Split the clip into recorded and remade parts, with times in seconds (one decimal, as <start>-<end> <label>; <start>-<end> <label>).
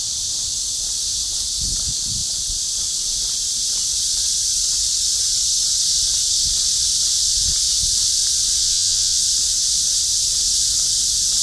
0.0-8.6 recorded; 8.6-9.2 remade; 9.2-11.4 recorded